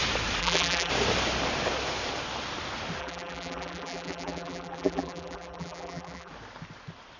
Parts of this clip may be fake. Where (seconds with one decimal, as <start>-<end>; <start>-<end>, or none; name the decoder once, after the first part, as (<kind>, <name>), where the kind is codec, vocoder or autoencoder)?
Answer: 0.4-0.9 (vocoder, BigVGAN v2); 3.0-6.3